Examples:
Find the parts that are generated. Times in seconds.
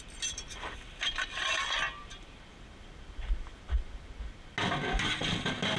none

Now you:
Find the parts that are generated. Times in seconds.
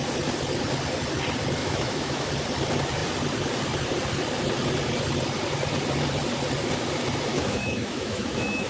1.6-2.3 (autoencoder, DAC-VAE); 7.3-8.7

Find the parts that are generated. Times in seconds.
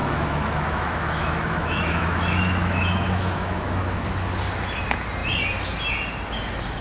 0.0-4.1 (autoencoder, DAC-VAE)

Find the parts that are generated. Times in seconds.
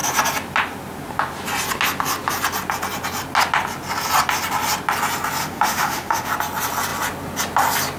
5.4-6.3 (autoencoder, DAC-VAE)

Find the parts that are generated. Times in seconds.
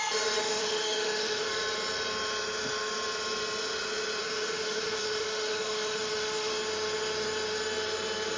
0.4-1.5 (autoencoder, DAC-VAE); 4.2-6.5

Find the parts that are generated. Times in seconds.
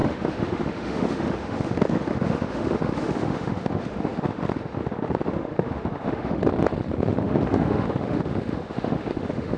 0.0-6.4 (autoencoder, DAC-VAE); 6.9-9.6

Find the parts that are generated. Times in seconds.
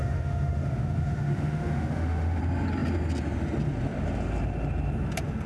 0.0-2.4 (autoencoder, DAC-VAE)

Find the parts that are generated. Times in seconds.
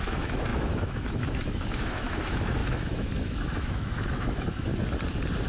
0.0-4.7 (autoencoder, DAC-VAE)